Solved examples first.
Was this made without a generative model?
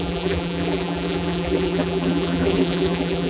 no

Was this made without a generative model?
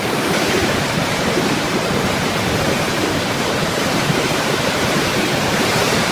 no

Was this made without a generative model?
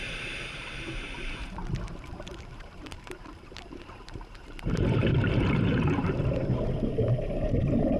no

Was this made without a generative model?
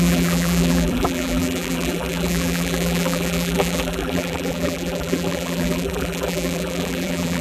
no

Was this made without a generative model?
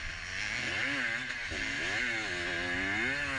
yes